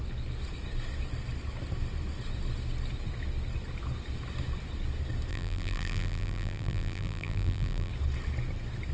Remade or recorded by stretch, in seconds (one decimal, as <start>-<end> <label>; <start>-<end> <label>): 0.0-5.3 recorded; 5.3-7.9 remade; 7.9-8.9 recorded